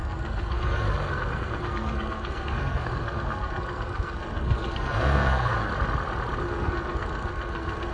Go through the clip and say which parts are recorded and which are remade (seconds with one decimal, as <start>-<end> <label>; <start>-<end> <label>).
0.0-5.7 remade; 5.7-6.4 recorded; 6.4-7.9 remade